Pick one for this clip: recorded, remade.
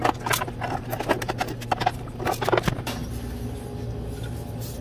recorded